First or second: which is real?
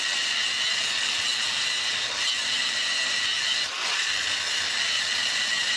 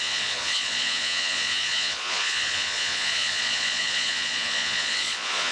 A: first